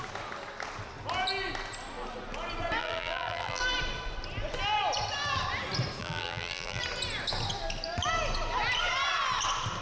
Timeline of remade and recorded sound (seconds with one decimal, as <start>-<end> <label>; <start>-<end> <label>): 0.0-2.8 recorded; 2.8-3.6 remade; 3.6-6.0 recorded; 6.0-6.8 remade; 6.8-9.8 recorded